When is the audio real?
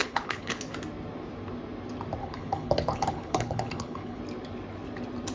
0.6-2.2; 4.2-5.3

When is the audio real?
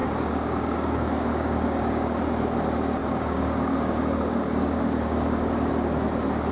2.2-3.0; 5.7-6.5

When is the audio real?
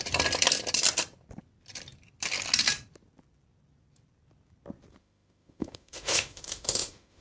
0.0-5.0